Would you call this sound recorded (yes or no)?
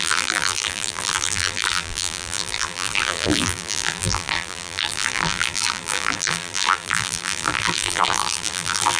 no